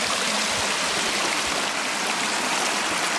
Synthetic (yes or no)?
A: no